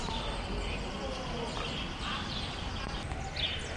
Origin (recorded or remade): recorded